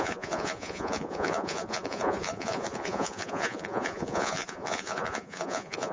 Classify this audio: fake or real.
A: fake